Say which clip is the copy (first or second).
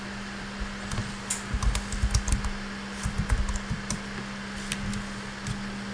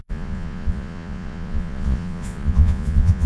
second